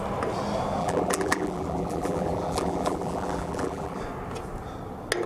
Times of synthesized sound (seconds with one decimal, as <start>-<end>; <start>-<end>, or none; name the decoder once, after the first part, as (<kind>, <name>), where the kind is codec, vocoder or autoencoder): 0.8-4.0 (vocoder, BigVGAN v2)